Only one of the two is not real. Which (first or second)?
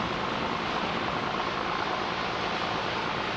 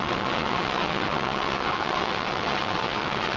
second